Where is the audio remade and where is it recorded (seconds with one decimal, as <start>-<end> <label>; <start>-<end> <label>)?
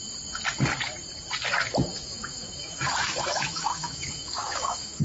0.0-1.9 recorded; 1.9-5.0 remade